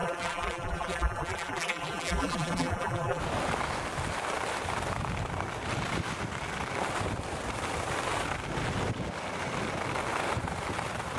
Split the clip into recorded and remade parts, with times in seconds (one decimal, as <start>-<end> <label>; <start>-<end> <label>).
0.0-3.2 remade; 3.2-11.2 recorded